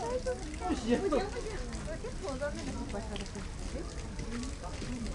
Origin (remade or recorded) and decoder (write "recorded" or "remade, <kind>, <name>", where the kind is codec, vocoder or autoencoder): recorded